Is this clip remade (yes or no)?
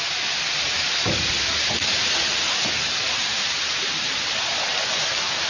no